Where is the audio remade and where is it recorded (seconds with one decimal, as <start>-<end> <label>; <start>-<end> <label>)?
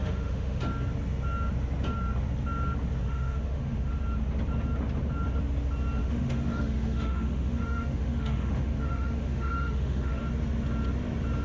0.0-0.6 remade; 0.6-3.0 recorded; 3.0-4.0 remade; 4.0-6.0 recorded; 6.0-10.2 remade; 10.2-11.4 recorded